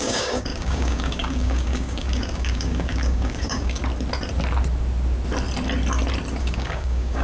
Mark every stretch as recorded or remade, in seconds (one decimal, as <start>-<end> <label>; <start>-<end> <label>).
0.0-3.8 remade; 3.8-6.4 recorded; 6.4-7.2 remade